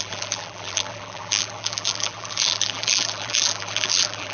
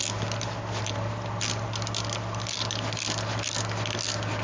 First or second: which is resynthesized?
first